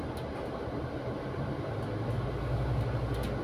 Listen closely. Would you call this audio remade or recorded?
recorded